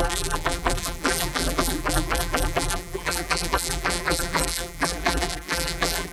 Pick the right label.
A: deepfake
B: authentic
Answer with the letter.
A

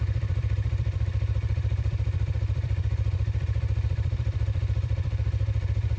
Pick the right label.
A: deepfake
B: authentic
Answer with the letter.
A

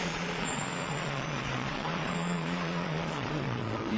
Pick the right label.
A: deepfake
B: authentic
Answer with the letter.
A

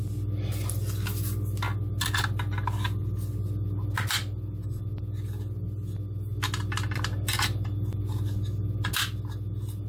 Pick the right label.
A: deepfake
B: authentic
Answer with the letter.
B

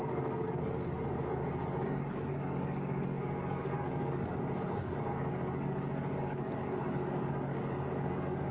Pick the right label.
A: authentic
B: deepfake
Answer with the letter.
B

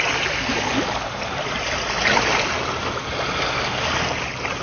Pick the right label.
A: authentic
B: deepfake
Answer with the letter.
A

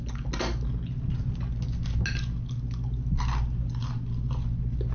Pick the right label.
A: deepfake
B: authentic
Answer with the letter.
B